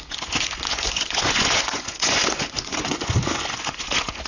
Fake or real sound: fake